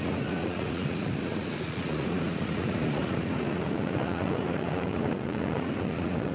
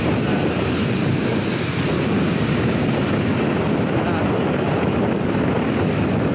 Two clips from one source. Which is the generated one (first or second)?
first